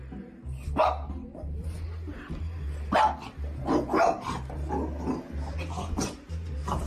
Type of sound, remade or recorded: recorded